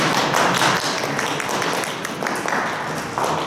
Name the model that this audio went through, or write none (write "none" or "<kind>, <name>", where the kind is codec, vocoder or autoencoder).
none